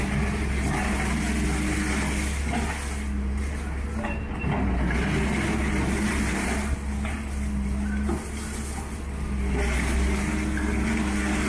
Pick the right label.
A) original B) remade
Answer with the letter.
A